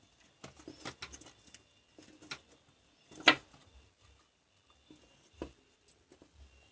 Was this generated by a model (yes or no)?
no